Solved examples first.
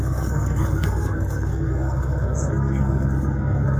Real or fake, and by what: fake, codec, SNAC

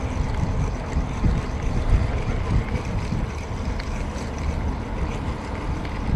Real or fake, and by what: real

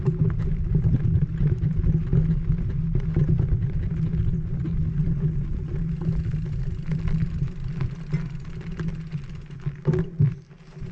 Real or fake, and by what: real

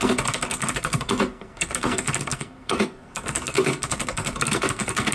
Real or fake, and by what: fake, codec, SNAC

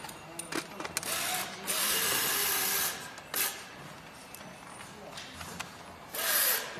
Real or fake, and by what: real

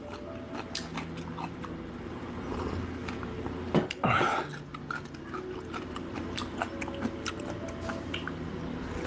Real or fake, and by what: real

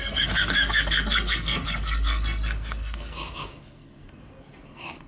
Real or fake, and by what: fake, codec, SNAC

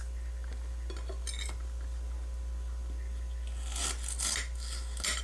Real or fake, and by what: real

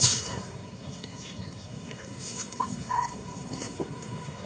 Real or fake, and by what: fake, codec, SNAC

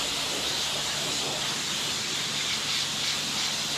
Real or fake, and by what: real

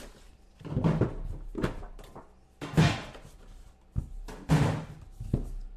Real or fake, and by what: real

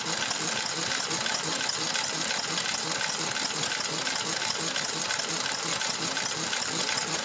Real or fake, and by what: real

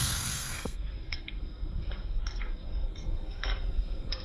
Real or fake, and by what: fake, codec, SNAC